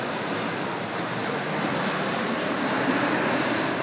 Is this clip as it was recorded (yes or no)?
no